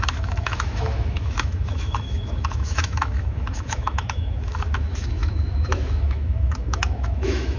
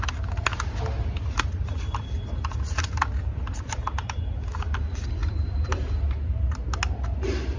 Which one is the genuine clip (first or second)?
second